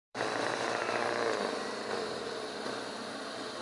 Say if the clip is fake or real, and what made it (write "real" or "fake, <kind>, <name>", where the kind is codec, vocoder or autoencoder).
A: fake, vocoder, BigVGAN v2